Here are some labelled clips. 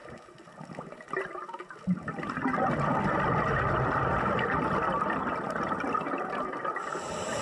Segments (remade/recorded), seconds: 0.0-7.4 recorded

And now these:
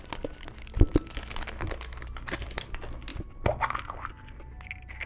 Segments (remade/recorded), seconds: 0.0-5.1 recorded

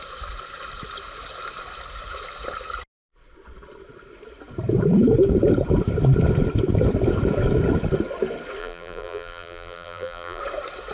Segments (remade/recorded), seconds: 0.0-8.6 recorded; 8.6-10.4 remade; 10.4-10.9 recorded

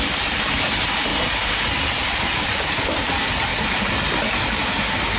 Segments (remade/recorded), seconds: 0.0-1.1 recorded; 1.1-2.9 remade; 2.9-5.2 recorded